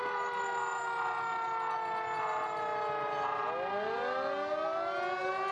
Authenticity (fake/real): real